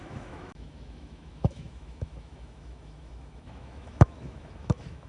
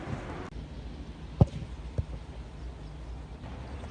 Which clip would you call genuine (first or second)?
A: second